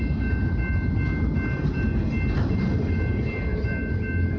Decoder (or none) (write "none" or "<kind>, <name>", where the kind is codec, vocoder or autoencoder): none